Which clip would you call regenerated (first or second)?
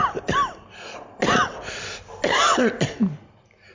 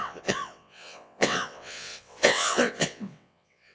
second